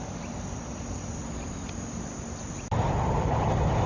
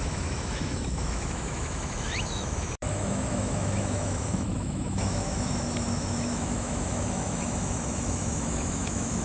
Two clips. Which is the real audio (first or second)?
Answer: first